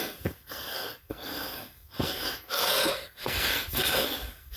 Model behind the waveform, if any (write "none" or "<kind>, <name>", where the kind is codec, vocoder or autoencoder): codec, SNAC